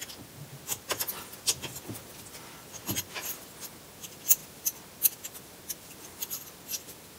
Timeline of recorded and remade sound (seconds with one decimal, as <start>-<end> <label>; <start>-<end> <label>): 0.0-7.2 recorded